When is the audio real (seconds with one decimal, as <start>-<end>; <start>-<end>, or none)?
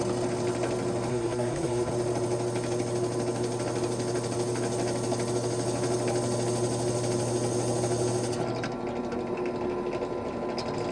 0.0-1.1; 1.9-10.9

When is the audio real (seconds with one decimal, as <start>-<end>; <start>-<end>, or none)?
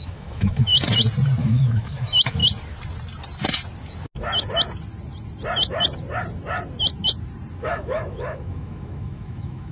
0.7-1.4; 2.4-7.6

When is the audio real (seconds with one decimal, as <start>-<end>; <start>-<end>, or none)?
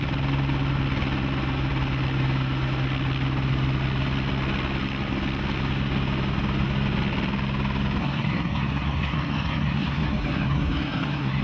0.0-8.0